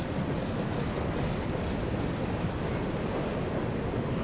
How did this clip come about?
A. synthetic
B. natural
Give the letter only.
B